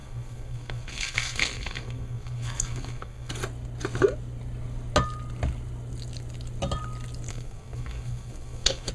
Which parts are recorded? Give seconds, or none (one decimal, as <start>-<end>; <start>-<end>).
3.3-7.3